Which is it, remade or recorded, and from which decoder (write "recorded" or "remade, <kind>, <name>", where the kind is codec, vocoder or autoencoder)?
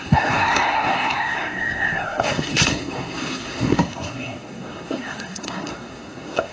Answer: remade, codec, SNAC